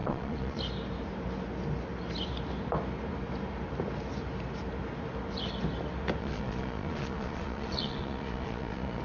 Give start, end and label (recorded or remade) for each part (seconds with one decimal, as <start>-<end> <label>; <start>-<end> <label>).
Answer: 0.0-0.6 remade; 0.6-6.2 recorded; 6.2-9.0 remade